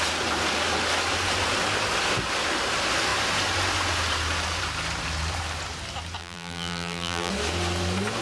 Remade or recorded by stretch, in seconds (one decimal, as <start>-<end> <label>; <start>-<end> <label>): 0.0-6.2 recorded; 6.2-7.3 remade; 7.3-8.2 recorded